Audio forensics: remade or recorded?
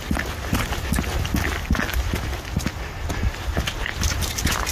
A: recorded